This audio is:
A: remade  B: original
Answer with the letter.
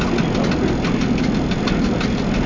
B